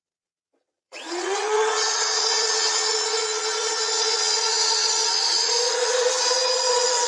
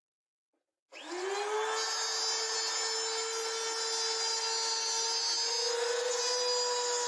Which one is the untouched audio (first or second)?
second